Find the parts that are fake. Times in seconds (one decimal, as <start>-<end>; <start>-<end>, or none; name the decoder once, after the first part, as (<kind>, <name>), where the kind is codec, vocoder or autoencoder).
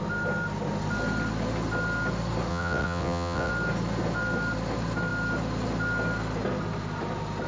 2.5-3.5 (vocoder, WaveNeXt)